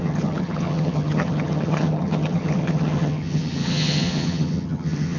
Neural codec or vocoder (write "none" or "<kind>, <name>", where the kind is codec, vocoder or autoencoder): vocoder, HiFi-GAN